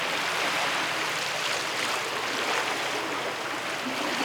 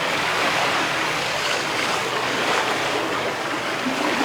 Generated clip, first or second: second